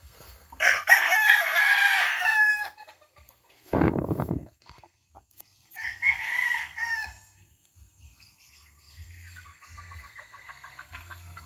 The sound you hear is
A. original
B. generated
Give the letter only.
B